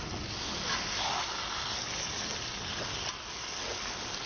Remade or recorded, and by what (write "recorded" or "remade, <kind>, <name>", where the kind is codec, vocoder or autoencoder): recorded